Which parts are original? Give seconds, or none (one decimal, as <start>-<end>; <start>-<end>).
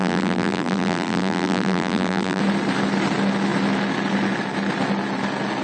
2.4-5.6